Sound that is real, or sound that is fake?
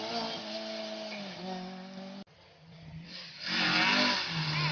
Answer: real